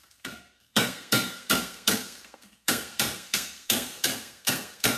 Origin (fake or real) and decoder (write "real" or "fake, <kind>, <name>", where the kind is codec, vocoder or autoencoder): fake, codec, SNAC